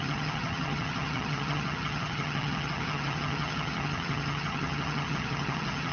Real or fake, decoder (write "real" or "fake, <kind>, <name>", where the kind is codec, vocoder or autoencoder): fake, vocoder, HiFi-GAN